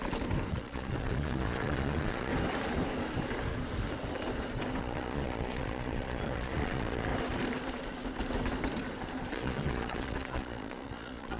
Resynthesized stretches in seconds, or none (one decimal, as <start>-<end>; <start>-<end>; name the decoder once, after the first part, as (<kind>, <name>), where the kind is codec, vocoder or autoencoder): 0.5-2.3 (vocoder, Vocos); 4.8-7.1; 9.3-11.4